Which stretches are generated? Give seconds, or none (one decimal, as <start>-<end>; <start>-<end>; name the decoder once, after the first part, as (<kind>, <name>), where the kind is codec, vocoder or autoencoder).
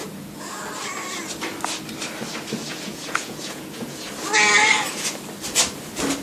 0.0-0.6 (vocoder, Vocos); 2.6-4.1